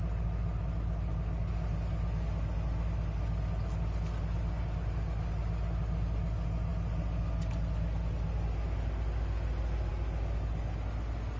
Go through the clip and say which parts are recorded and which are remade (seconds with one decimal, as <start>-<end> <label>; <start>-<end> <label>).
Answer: 0.0-11.4 recorded